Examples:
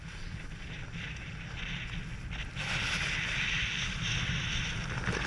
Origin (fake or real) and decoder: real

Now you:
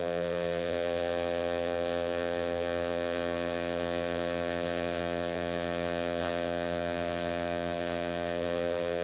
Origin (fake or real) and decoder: fake, vocoder, BigVGAN v2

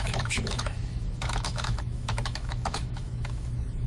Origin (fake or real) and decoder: fake, autoencoder, DAC-VAE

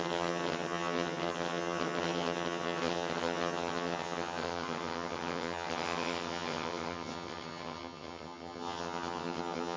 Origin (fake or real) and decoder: fake, vocoder, HiFi-GAN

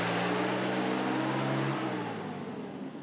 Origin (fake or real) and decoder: real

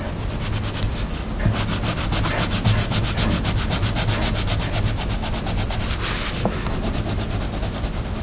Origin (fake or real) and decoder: real